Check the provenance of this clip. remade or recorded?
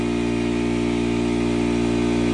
recorded